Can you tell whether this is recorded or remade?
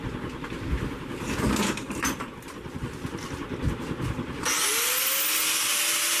recorded